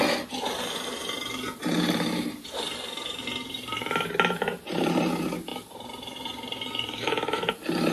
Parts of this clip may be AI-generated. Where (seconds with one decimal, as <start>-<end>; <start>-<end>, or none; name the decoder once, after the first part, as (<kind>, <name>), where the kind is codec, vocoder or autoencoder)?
1.6-5.0 (vocoder, BigVGAN v2)

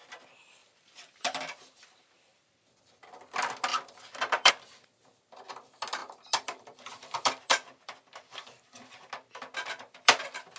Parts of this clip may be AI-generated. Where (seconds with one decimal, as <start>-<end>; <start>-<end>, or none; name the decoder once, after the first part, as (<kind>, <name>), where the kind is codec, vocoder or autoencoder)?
0.6-3.2 (vocoder, BigVGAN v2); 3.7-4.5; 6.0-9.1; 9.6-10.2

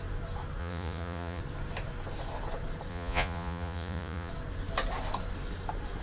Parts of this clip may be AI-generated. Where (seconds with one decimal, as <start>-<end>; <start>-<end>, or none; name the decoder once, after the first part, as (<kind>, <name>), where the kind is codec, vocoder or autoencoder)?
0.6-1.4 (vocoder, Vocos); 2.9-4.3

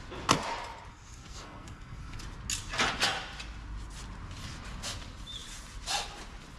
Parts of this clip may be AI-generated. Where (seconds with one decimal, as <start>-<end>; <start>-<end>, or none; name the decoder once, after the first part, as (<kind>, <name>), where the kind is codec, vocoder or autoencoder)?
0.9-2.2 (codec, SNAC)

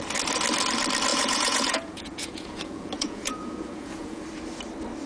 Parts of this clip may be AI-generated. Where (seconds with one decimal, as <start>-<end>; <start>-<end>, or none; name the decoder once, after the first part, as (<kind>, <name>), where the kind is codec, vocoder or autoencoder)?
1.1-4.2 (vocoder, Vocos)

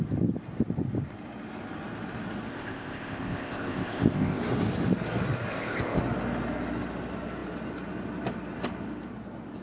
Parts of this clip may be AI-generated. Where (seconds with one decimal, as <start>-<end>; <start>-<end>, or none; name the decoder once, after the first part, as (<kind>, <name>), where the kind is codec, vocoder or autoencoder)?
2.5-4.4 (codec, ZipCodec); 5.5-6.0